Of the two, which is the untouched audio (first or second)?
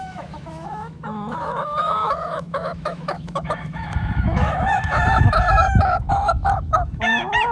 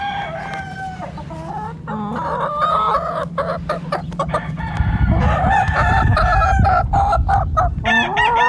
second